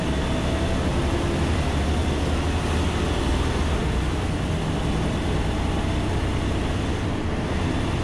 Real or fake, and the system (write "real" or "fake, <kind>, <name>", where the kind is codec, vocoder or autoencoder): real